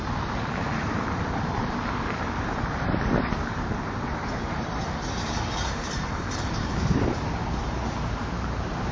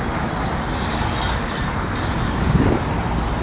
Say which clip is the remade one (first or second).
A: first